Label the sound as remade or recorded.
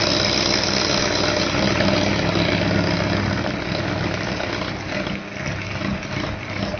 recorded